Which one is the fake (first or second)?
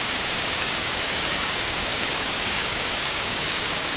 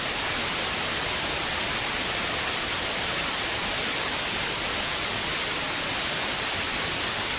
first